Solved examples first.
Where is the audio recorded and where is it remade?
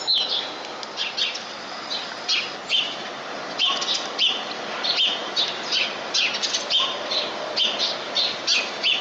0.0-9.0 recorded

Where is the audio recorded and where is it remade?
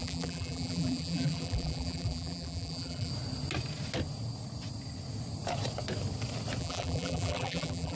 0.0-3.1 remade; 3.1-6.6 recorded; 6.6-8.0 remade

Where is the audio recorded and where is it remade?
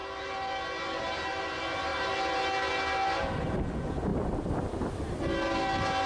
0.0-4.1 recorded; 4.1-4.9 remade; 4.9-6.1 recorded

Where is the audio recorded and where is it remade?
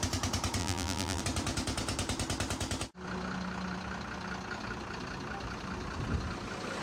0.0-0.6 recorded; 0.6-1.2 remade; 1.2-6.8 recorded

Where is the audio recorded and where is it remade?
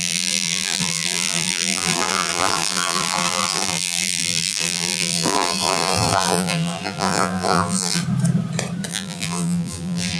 0.0-8.0 remade; 8.0-8.9 recorded; 8.9-10.2 remade